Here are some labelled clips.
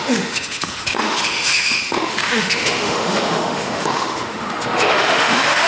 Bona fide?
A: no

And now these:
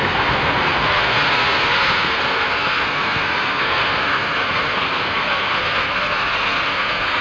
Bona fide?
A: no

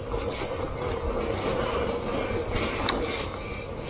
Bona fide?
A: yes